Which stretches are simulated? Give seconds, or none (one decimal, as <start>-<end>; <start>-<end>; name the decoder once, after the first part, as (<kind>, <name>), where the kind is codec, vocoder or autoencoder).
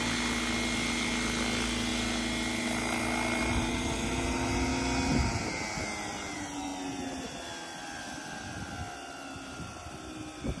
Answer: none